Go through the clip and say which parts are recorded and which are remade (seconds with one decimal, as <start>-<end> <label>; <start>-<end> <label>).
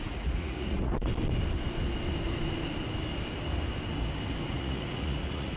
0.0-1.1 remade; 1.1-4.5 recorded; 4.5-5.6 remade